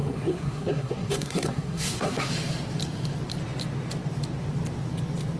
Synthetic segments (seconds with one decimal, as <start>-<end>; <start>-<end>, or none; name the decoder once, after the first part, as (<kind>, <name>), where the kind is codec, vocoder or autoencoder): 0.0-2.3 (codec, SNAC)